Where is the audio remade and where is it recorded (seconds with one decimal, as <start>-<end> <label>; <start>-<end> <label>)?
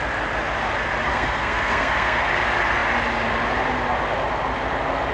0.0-1.1 recorded; 1.1-2.3 remade; 2.3-5.1 recorded